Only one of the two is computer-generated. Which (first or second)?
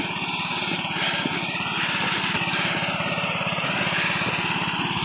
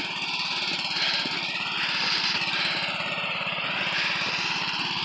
second